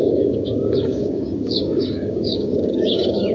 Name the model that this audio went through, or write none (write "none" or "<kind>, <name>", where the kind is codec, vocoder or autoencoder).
codec, DAC